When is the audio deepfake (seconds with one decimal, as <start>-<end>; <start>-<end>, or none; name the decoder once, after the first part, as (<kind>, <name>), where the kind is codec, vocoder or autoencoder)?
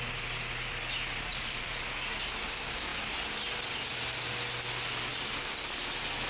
1.3-1.8 (vocoder, BigVGAN v2); 5.1-5.8